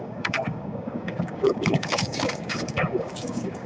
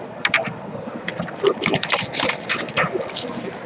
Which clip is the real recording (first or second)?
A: second